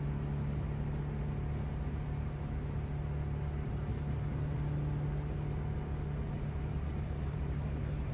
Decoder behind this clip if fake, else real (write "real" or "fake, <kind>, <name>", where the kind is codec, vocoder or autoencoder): real